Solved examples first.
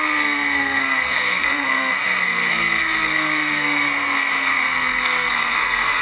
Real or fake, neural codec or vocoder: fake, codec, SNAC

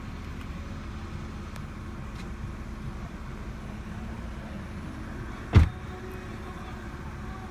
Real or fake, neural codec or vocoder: real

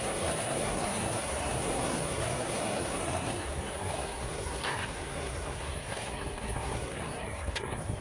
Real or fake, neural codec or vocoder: fake, codec, SNAC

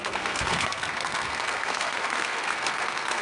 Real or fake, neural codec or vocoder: fake, codec, SNAC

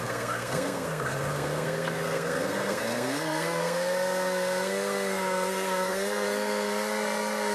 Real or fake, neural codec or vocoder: fake, codec, SNAC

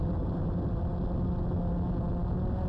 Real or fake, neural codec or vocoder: real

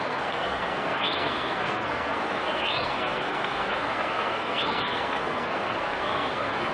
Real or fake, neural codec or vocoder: fake, codec, SNAC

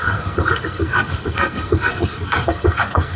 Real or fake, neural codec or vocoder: fake, codec, SNAC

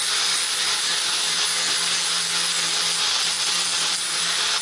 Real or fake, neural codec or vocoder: real